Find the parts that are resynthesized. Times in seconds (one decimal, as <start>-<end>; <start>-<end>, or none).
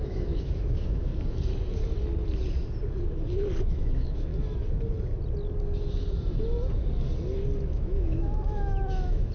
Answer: 0.0-1.1; 3.6-4.3; 7.7-9.3